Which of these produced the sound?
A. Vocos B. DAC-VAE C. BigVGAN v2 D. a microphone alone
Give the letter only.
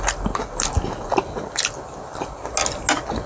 D